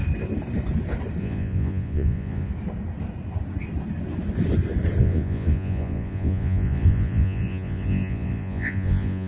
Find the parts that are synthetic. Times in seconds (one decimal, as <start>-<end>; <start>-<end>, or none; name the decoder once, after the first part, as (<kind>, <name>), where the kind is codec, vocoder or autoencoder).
1.2-2.5 (vocoder, Vocos); 5.0-9.3